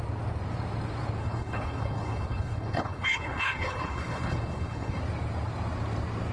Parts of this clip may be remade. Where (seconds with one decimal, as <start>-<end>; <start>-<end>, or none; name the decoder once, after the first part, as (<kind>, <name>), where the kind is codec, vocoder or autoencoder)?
1.2-5.0 (codec, HILCodec)